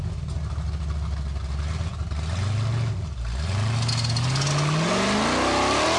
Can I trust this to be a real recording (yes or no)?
yes